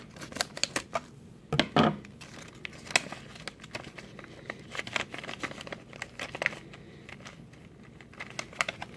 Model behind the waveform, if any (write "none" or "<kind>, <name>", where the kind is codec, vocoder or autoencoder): none